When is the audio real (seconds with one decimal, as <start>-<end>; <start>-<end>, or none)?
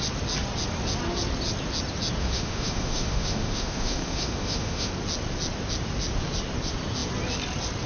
0.0-2.2; 4.9-7.9